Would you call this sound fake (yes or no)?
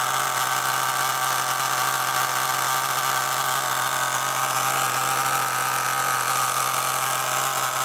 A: no